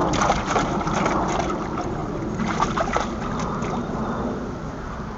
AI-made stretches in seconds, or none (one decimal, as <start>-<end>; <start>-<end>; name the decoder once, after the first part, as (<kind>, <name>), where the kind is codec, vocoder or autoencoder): none

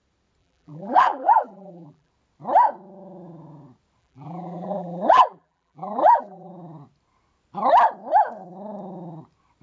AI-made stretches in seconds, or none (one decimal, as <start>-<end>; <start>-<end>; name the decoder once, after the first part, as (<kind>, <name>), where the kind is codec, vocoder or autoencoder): 0.4-2.1 (vocoder, BigVGAN v2); 4.0-6.5

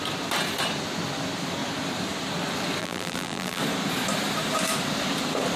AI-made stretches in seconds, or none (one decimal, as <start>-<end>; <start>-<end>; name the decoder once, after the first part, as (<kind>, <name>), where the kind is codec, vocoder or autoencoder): 2.8-3.6 (vocoder, BigVGAN v2)

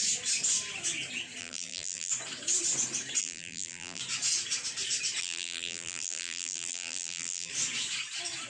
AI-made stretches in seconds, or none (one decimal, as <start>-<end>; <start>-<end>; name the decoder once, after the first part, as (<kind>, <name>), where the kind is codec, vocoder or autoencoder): 1.4-2.1 (vocoder, BigVGAN v2); 3.2-4.0; 5.2-7.5

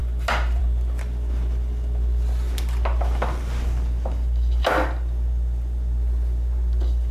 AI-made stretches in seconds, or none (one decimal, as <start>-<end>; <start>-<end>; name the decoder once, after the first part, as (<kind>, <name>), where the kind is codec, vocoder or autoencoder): none

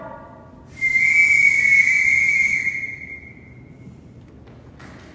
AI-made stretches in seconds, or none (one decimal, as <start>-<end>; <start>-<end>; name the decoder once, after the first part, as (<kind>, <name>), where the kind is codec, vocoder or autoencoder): 1.2-4.3 (vocoder, BigVGAN v2)